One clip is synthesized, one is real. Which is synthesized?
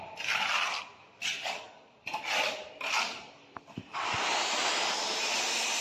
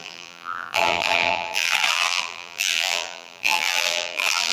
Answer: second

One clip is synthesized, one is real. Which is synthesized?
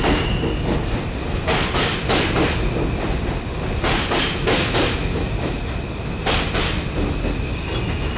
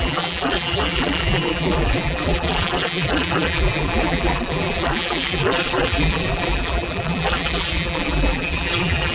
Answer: second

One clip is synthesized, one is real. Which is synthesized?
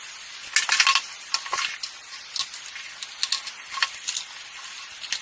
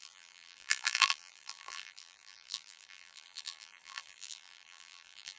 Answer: second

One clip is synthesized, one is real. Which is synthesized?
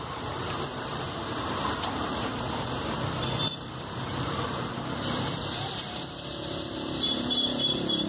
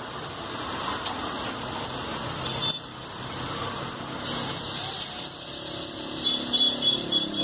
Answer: first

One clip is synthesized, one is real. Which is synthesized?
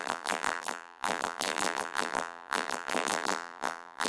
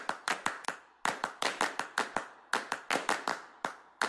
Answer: first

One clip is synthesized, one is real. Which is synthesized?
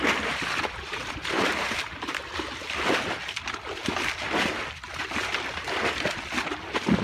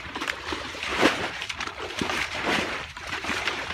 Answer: second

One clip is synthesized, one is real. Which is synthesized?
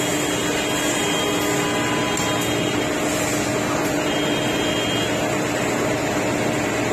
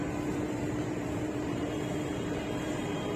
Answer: second